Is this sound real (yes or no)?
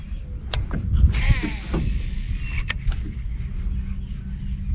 yes